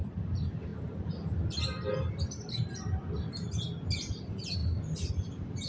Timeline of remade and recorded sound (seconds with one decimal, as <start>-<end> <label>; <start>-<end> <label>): 0.0-0.7 remade; 0.7-4.1 recorded; 4.1-4.6 remade; 4.6-5.1 recorded; 5.1-5.7 remade